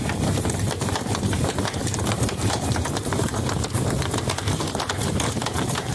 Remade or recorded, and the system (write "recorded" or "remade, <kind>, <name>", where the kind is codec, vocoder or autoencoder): remade, vocoder, BigVGAN v2